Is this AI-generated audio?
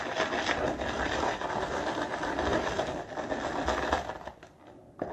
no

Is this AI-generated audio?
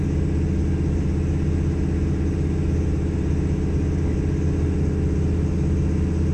no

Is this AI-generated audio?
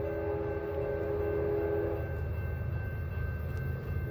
no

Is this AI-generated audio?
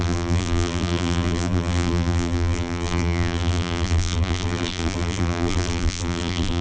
yes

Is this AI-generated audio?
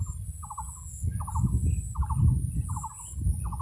no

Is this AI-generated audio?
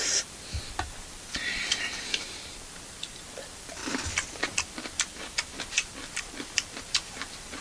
yes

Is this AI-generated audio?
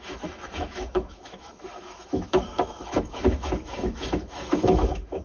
yes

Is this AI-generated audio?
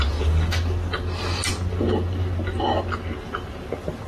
no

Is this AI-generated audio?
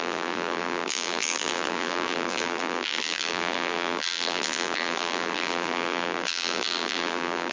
yes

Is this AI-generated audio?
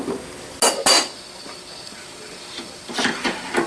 no